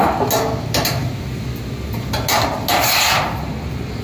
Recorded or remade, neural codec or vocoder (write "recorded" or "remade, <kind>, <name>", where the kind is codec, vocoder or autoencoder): recorded